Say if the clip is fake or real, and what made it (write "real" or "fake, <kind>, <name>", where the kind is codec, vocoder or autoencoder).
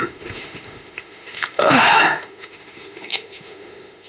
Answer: fake, autoencoder, DAC-VAE